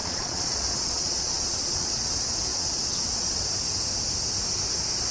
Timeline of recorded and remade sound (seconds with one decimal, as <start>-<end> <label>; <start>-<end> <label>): 0.0-2.0 remade; 2.0-2.5 recorded; 2.5-3.4 remade; 3.4-5.1 recorded